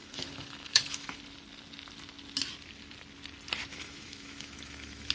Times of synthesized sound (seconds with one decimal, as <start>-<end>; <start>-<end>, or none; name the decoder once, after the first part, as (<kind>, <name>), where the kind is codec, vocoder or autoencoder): 0.0-1.2 (autoencoder, DAC-VAE); 3.7-5.1